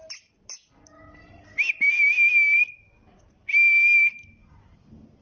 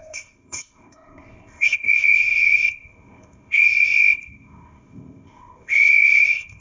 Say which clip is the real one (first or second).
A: first